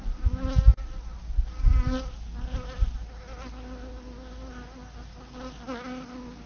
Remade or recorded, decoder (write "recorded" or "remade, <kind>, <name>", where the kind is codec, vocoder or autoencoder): recorded